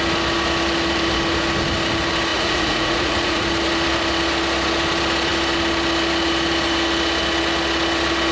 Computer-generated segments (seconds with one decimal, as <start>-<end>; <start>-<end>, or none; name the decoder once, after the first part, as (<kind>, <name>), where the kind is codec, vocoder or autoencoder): 2.3-3.5 (vocoder, Vocos)

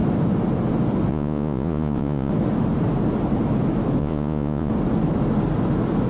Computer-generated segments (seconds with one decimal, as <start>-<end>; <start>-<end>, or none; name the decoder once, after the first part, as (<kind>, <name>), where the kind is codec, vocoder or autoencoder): 1.1-2.3 (vocoder, Vocos); 4.0-4.7

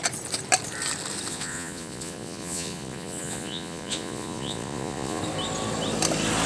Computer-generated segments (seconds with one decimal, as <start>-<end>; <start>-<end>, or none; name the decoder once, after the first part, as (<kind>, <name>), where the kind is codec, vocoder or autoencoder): 1.3-5.2 (vocoder, Vocos)

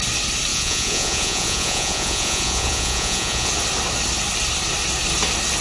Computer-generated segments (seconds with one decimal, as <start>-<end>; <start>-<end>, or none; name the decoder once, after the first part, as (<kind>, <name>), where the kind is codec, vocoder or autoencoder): 0.5-3.5 (vocoder, Vocos)

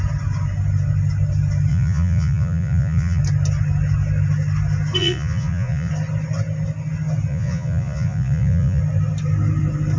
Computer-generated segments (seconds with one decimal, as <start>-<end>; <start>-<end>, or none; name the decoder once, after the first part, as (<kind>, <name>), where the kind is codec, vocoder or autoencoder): 1.7-3.2 (vocoder, Vocos); 5.0-5.9; 7.3-8.8

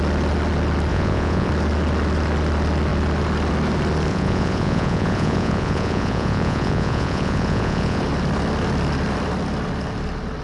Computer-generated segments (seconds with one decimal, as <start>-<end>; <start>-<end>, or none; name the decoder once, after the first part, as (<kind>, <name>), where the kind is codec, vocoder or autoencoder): 0.9-1.5 (vocoder, Vocos); 4.1-8.0